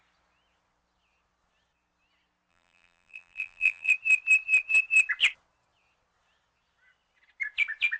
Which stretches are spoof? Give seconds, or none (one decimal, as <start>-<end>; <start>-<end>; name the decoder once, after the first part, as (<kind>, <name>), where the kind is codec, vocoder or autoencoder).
2.5-3.9 (vocoder, BigVGAN v2)